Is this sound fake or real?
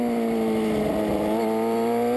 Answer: fake